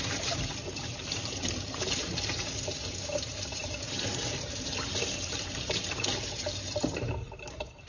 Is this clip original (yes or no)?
no